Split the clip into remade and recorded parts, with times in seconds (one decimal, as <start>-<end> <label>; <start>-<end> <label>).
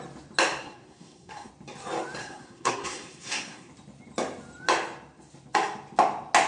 0.0-0.6 recorded; 0.6-1.5 remade; 1.5-2.2 recorded; 2.2-3.7 remade; 3.7-6.5 recorded